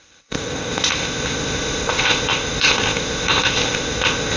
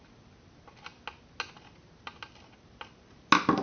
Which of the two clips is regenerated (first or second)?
first